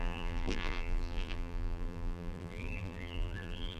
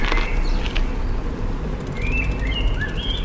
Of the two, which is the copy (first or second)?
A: first